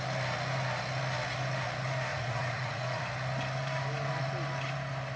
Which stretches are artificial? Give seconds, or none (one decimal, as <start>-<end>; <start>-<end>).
2.1-3.0